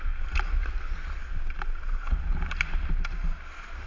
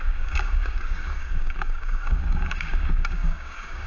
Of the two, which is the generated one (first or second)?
second